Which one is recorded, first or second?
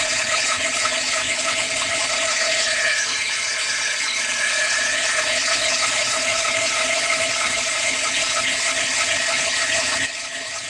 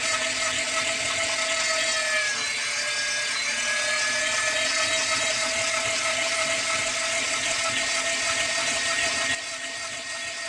second